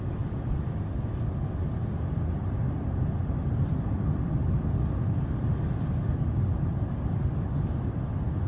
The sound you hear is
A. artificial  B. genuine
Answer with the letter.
B